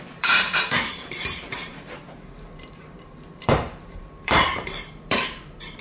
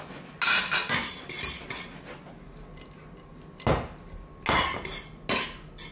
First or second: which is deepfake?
first